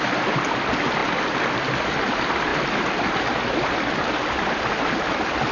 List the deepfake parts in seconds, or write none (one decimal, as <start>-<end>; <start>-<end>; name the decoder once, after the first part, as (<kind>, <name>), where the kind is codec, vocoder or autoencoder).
0.0-1.0 (vocoder, BigVGAN v2); 2.0-2.5; 4.8-5.5